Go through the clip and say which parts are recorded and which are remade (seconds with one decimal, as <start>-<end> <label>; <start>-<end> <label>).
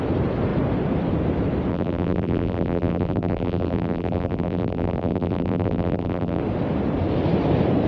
0.0-1.7 recorded; 1.7-6.4 remade; 6.4-7.9 recorded